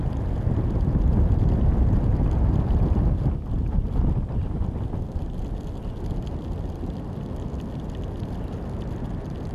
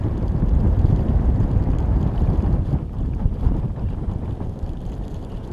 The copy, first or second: second